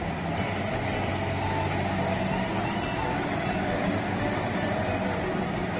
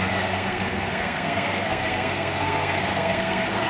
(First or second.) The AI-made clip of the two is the second